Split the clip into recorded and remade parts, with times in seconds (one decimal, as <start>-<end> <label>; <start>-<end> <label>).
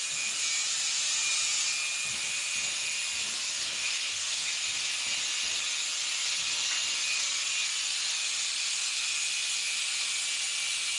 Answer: 0.0-3.6 recorded; 3.6-4.5 remade; 4.5-11.0 recorded